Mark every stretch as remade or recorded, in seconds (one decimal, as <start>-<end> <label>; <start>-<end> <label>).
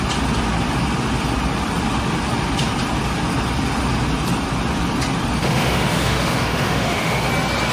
0.0-5.4 recorded; 5.4-7.3 remade; 7.3-7.7 recorded